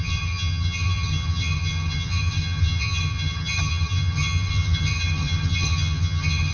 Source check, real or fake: fake